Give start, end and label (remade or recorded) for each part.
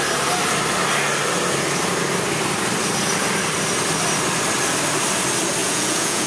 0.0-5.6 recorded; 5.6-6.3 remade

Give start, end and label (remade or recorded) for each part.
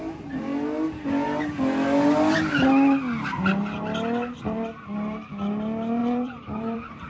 0.0-6.0 recorded; 6.0-7.1 remade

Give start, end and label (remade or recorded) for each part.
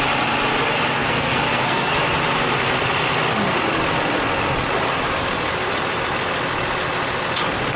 0.0-1.0 recorded; 1.0-1.9 remade; 1.9-7.8 recorded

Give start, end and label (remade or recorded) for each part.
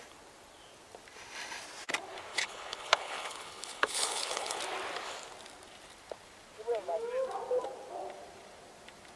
0.0-2.3 recorded; 2.3-4.6 remade; 4.6-9.2 recorded